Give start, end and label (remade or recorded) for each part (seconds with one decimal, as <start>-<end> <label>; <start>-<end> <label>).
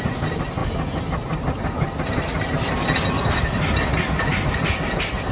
0.0-5.3 recorded